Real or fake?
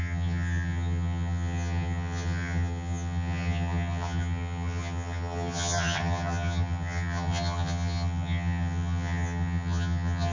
fake